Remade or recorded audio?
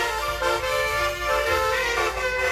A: remade